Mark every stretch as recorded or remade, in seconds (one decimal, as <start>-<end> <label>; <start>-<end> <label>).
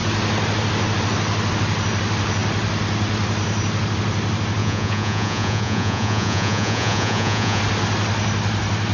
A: 0.0-4.6 recorded; 4.6-7.6 remade; 7.6-8.9 recorded